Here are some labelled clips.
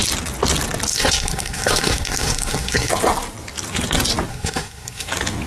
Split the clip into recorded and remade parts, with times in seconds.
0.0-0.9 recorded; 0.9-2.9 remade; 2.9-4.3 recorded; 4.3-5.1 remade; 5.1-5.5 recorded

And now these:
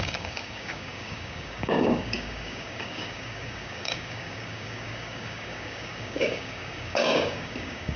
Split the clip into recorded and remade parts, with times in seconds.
0.0-8.0 remade

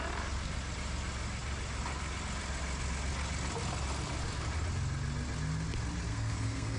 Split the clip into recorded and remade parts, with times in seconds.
0.0-6.1 recorded; 6.1-6.8 remade

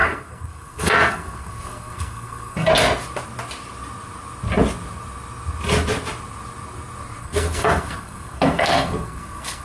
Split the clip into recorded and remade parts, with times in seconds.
0.0-2.7 remade; 2.7-7.2 recorded; 7.2-9.6 remade

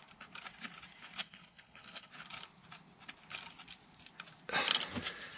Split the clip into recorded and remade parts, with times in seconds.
0.0-1.2 recorded; 1.2-2.1 remade; 2.1-5.4 recorded

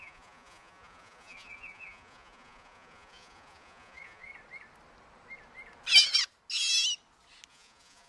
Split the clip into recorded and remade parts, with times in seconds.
0.0-4.3 remade; 4.3-7.5 recorded; 7.5-8.1 remade